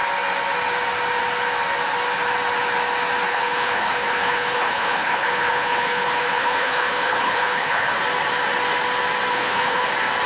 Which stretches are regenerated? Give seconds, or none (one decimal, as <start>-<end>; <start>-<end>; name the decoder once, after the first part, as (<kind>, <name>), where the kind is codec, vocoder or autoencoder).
3.3-8.0 (codec, HILCodec); 9.3-9.8